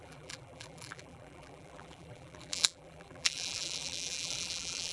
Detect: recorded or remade remade